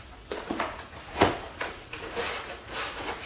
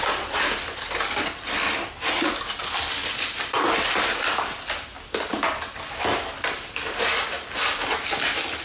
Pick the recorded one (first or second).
second